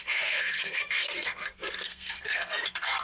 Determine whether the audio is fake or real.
fake